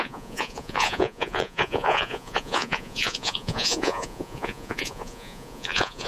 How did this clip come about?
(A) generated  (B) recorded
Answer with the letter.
A